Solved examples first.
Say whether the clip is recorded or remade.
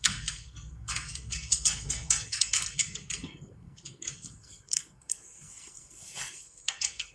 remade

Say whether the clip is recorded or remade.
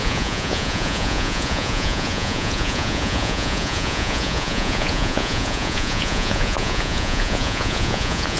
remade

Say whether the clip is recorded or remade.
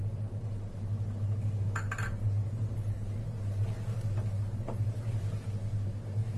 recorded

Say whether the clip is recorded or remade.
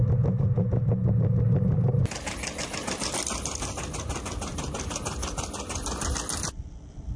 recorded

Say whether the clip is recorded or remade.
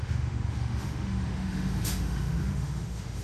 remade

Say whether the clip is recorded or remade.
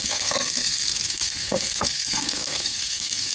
remade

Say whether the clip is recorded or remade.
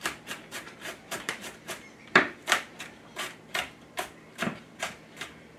remade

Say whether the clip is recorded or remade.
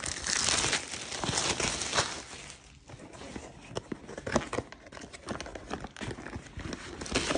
recorded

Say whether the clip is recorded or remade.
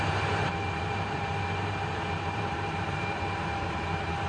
remade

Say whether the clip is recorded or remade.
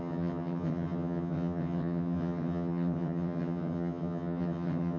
remade